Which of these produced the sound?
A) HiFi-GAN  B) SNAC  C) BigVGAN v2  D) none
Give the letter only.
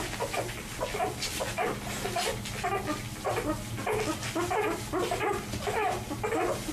D